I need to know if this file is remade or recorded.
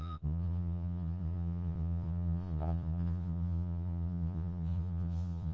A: remade